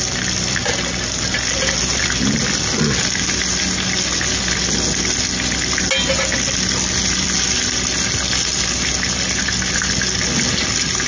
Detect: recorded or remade recorded